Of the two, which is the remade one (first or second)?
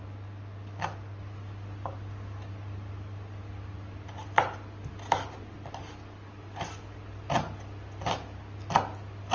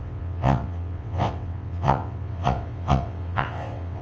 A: second